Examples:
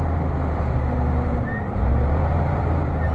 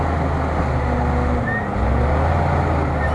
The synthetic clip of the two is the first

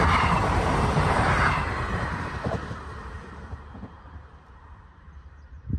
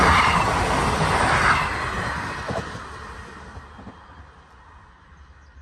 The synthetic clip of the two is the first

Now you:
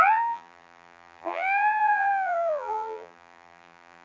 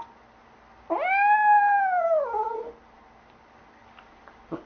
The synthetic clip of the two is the first